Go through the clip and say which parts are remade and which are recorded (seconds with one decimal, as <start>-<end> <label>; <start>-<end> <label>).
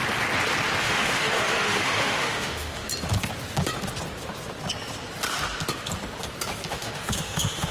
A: 0.0-0.8 recorded; 0.8-2.9 remade; 2.9-6.7 recorded; 6.7-7.7 remade